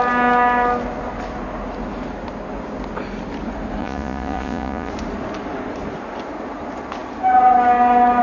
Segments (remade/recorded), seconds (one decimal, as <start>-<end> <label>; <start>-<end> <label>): 0.0-3.8 recorded; 3.8-4.9 remade; 4.9-8.2 recorded